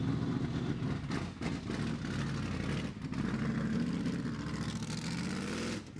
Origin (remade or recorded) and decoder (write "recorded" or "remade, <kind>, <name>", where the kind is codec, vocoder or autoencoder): recorded